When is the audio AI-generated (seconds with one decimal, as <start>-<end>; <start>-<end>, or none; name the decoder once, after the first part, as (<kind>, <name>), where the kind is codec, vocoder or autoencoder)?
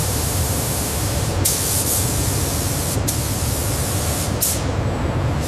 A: 0.0-1.3 (autoencoder, DAC-VAE)